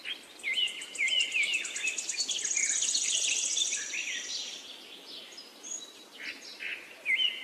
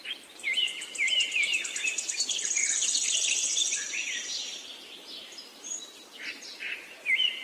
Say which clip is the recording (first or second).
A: first